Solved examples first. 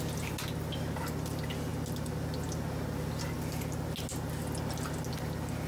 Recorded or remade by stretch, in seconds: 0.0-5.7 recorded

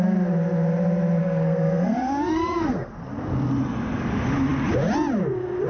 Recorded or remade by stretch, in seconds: 0.0-1.2 recorded; 1.2-3.0 remade; 3.0-5.7 recorded